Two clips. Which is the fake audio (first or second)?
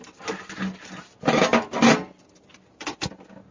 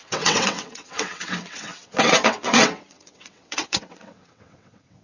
second